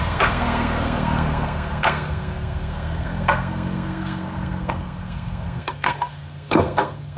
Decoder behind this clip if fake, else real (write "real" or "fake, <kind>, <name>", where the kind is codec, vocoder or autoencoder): fake, codec, SNAC